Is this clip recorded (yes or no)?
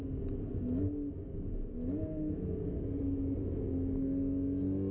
yes